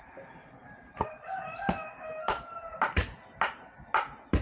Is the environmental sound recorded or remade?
recorded